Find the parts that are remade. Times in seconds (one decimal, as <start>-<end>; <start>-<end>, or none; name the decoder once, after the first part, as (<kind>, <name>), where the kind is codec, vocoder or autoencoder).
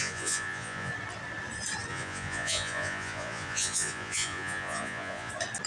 0.0-0.9 (vocoder, Vocos); 1.9-5.3